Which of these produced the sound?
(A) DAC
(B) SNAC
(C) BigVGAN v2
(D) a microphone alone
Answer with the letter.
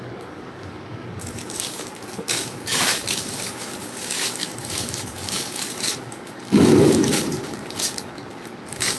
A